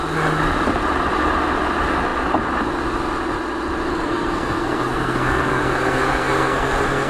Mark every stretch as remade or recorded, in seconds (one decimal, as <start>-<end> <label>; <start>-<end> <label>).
0.0-3.9 recorded; 3.9-7.1 remade